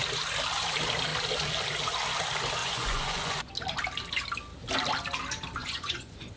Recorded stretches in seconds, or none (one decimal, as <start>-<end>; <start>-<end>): 0.0-2.6; 3.5-5.6